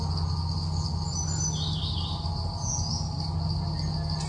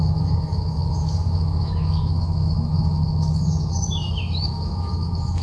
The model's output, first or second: second